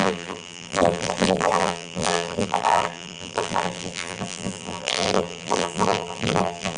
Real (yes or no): no